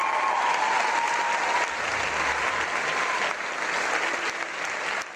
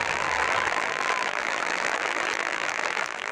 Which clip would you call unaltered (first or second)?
first